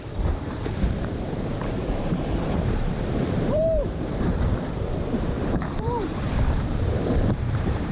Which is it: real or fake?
fake